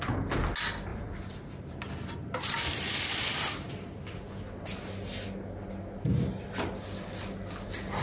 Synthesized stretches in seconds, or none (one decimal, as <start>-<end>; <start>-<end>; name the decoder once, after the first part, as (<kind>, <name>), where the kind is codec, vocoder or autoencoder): 0.9-1.9 (vocoder, BigVGAN v2)

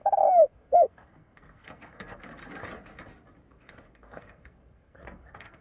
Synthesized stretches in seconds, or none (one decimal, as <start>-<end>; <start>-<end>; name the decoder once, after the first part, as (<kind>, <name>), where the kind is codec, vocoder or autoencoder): 0.0-2.4 (codec, SNAC); 3.5-5.6

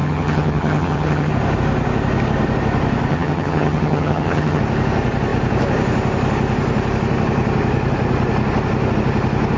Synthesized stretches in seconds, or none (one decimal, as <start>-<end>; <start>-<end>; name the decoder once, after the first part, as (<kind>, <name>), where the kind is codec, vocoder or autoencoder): 0.0-1.3 (vocoder, HiFi-GAN); 3.1-4.6

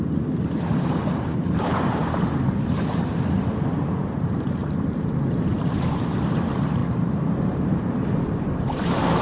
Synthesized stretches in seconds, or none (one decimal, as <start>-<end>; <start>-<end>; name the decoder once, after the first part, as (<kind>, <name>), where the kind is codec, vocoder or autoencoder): 0.0-9.2 (vocoder, BigVGAN v2)

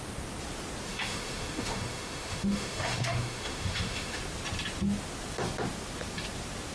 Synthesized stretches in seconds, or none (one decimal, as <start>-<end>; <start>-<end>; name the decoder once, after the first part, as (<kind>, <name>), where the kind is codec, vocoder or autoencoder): 0.9-4.2 (autoencoder, DAC-VAE)

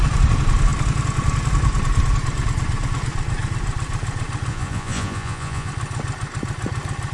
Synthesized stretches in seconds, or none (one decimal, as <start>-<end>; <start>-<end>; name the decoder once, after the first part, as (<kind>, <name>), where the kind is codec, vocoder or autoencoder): 4.5-5.7 (vocoder, Vocos)

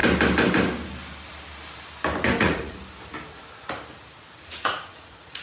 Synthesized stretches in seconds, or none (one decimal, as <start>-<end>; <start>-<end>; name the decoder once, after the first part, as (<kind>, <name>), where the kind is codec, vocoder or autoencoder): 2.4-2.8 (vocoder, Vocos); 4.4-5.4